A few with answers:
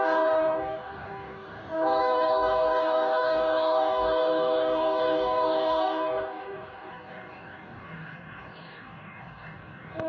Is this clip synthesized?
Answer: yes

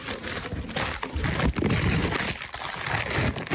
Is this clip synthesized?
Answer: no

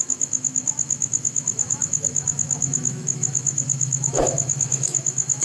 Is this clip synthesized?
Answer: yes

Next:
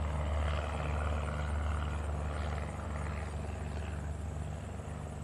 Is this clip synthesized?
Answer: no